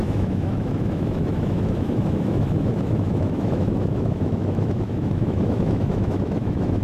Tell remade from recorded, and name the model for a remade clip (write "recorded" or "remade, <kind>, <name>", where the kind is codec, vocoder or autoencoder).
remade, autoencoder, DAC-VAE